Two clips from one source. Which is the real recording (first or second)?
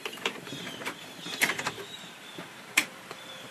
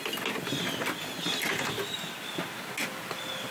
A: second